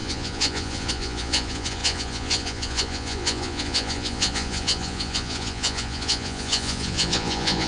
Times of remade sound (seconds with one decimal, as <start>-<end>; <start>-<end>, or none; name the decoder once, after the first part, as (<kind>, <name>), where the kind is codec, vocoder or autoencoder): 0.0-7.7 (vocoder, Vocos)